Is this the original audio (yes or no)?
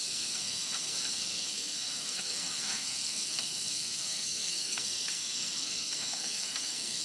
no